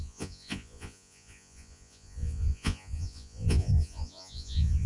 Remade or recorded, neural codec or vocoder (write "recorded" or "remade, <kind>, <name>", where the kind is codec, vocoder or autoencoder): remade, vocoder, Vocos